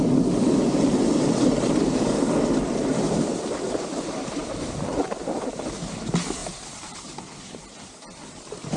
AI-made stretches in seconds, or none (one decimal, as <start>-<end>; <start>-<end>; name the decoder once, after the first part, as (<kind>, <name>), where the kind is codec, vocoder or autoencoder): none